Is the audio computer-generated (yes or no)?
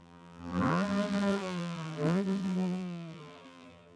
yes